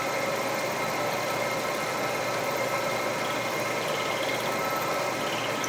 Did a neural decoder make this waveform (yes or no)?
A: no